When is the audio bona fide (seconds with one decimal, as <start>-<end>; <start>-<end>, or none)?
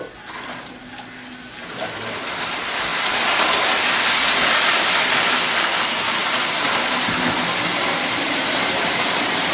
0.0-6.2